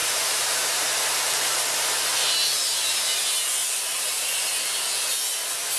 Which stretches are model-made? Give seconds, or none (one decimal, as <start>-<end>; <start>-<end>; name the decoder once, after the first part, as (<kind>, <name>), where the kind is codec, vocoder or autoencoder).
0.0-3.2 (vocoder, BigVGAN v2); 3.6-4.5